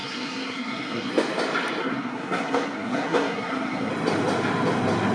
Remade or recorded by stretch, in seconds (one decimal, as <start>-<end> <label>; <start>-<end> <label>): 0.0-1.1 remade; 1.1-1.8 recorded; 1.8-3.9 remade; 3.9-5.1 recorded